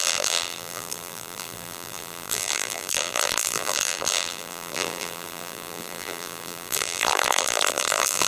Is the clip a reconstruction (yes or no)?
yes